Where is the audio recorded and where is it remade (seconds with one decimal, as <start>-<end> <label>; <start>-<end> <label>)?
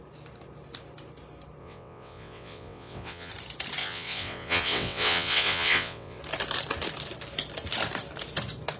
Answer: 0.0-1.6 recorded; 1.6-3.3 remade; 3.3-3.8 recorded; 3.8-6.2 remade; 6.2-8.8 recorded